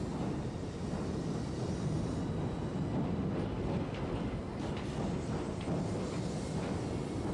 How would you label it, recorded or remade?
recorded